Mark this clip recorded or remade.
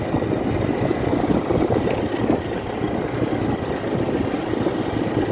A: recorded